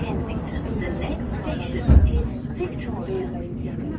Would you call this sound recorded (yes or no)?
no